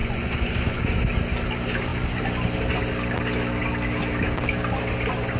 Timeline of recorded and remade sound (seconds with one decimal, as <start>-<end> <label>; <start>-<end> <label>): 0.0-0.8 remade; 0.8-5.4 recorded